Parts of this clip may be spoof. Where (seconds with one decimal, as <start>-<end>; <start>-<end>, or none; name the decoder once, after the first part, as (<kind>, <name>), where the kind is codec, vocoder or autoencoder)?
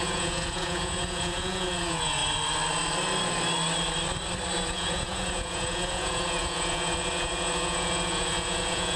0.0-2.2 (vocoder, Vocos); 4.7-9.0